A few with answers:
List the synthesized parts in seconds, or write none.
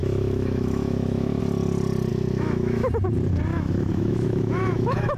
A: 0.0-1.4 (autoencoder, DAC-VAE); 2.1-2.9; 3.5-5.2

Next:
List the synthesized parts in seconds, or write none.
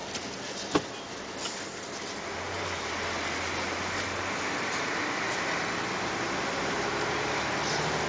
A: none